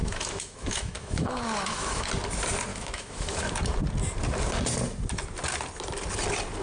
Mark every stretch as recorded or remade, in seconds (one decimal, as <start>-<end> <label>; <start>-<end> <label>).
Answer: 0.0-2.1 remade; 2.1-2.7 recorded; 2.7-3.5 remade; 3.5-6.6 recorded